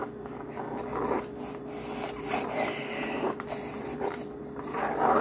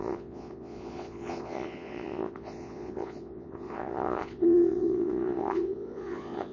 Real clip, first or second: first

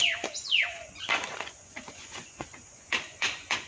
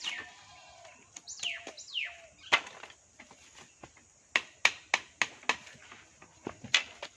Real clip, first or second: second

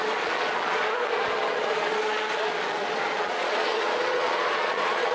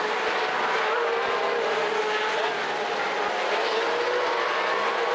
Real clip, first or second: second